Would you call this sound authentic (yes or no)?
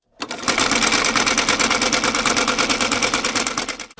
yes